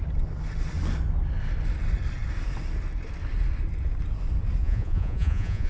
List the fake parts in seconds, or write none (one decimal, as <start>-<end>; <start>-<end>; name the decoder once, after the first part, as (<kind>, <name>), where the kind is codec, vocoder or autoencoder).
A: 4.6-5.7 (vocoder, Vocos)